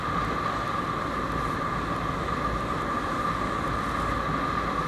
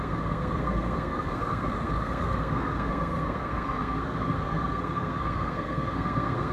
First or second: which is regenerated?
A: second